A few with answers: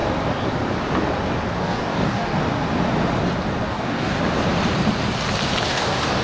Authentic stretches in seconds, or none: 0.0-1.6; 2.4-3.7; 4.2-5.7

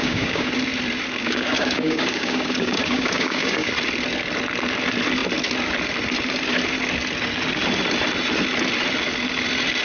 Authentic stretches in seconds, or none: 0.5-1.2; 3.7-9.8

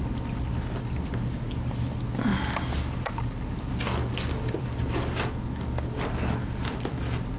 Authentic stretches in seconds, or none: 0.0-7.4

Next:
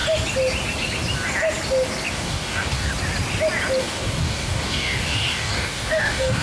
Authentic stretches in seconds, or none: 0.0-2.1; 2.9-3.8